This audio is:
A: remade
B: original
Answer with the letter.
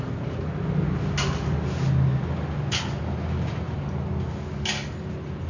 B